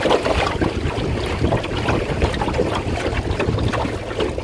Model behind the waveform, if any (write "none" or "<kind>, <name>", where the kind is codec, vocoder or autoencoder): none